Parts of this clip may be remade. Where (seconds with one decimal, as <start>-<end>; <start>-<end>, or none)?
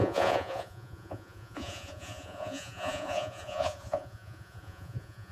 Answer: 0.0-5.3